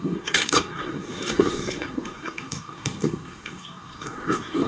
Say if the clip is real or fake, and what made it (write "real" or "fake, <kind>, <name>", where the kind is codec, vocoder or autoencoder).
fake, codec, SNAC